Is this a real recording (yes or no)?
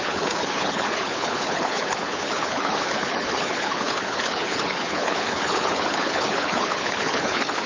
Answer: no